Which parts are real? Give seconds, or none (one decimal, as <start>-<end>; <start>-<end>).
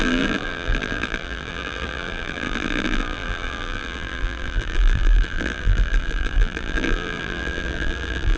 none